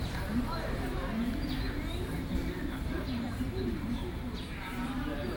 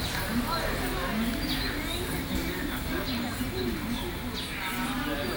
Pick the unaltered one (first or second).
second